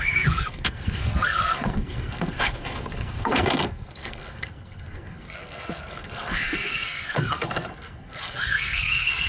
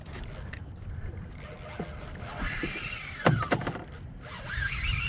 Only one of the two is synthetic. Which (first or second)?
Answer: first